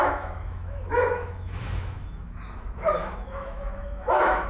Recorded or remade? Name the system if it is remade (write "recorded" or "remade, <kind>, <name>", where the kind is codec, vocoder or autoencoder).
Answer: remade, autoencoder, DAC-VAE